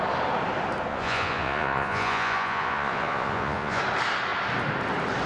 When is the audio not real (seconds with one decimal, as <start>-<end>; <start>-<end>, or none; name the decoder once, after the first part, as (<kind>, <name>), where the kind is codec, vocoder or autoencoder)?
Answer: 0.9-3.8 (vocoder, Vocos)